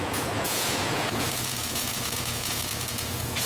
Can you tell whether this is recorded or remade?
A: remade